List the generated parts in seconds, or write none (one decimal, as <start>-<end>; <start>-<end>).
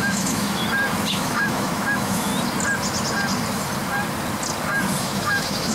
0.0-0.6; 1.1-2.3; 5.0-5.7